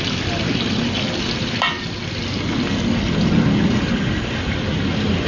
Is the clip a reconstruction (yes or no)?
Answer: no